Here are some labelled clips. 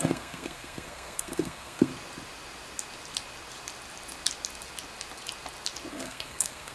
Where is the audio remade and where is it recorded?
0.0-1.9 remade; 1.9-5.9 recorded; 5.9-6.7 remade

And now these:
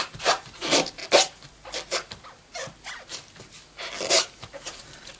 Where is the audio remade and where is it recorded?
0.0-1.0 remade; 1.0-4.1 recorded; 4.1-5.2 remade

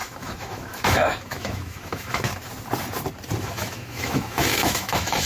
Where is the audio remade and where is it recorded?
0.0-2.3 remade; 2.3-3.4 recorded; 3.4-5.3 remade

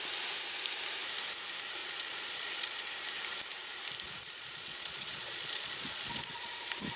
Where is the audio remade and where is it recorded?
0.0-1.8 recorded; 1.8-2.9 remade; 2.9-4.2 recorded; 4.2-6.5 remade; 6.5-7.0 recorded

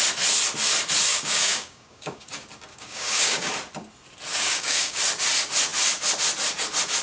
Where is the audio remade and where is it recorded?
0.0-1.1 recorded; 1.1-2.3 remade; 2.3-2.7 recorded; 2.7-3.5 remade; 3.5-4.3 recorded; 4.3-5.0 remade; 5.0-7.0 recorded

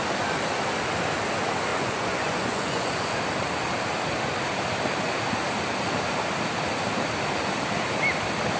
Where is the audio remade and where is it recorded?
0.0-1.7 recorded; 1.7-3.2 remade; 3.2-8.6 recorded

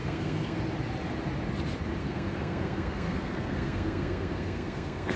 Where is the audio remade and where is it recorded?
0.0-0.6 remade; 0.6-2.0 recorded; 2.0-5.2 remade